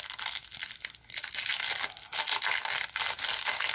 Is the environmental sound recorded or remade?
recorded